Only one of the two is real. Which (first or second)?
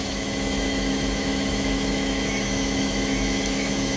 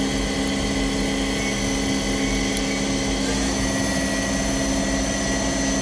second